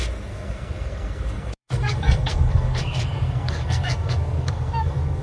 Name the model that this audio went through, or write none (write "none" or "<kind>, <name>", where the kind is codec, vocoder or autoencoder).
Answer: codec, SNAC